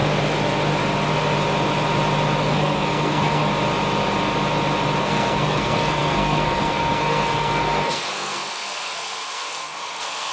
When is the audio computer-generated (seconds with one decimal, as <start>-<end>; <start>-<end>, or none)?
2.4-3.5; 5.0-10.3